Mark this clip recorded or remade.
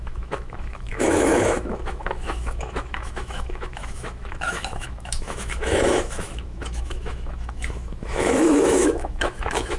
remade